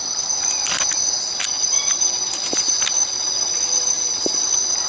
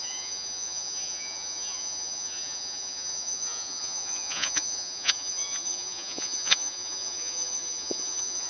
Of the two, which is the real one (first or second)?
first